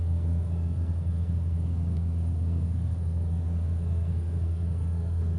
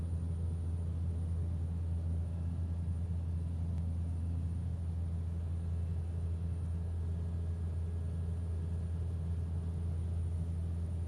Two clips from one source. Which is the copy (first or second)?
first